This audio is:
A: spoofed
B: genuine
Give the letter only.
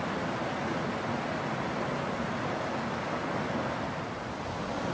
B